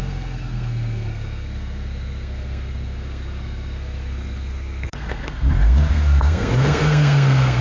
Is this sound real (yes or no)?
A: no